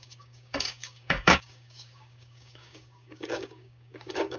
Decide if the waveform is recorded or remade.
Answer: remade